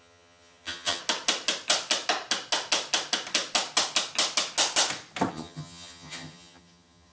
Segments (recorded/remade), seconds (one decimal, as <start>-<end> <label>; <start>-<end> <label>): 0.0-1.0 remade; 1.0-5.3 recorded; 5.3-7.1 remade